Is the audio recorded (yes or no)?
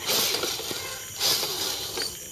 yes